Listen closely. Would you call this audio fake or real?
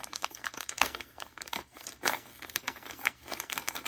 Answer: fake